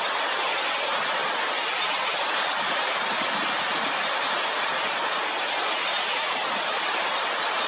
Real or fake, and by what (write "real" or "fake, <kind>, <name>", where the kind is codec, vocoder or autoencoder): real